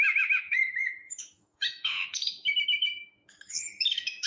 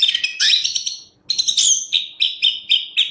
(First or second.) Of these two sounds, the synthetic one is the first